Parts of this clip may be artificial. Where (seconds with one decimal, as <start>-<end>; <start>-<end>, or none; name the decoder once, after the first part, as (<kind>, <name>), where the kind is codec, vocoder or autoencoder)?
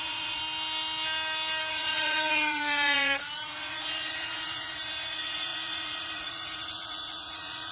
0.0-0.4 (vocoder, Vocos); 1.7-7.7